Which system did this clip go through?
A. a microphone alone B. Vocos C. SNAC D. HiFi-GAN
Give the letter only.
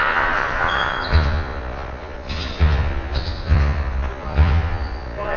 B